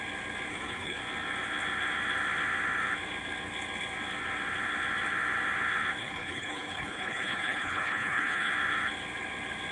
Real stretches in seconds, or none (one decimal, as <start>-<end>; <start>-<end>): 0.0-0.5; 1.0-6.0; 8.5-9.7